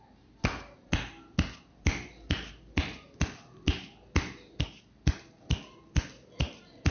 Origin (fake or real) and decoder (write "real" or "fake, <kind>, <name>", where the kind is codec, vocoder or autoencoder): real